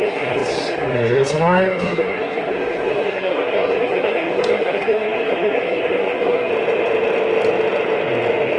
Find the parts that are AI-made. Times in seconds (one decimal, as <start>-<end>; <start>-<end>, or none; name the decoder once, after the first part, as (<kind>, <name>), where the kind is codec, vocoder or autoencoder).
0.0-6.5 (codec, SNAC)